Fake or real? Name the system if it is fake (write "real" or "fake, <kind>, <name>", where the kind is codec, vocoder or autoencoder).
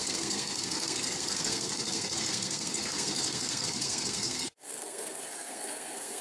fake, codec, SNAC